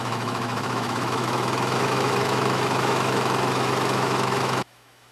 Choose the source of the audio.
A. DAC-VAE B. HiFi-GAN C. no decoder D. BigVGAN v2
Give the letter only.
A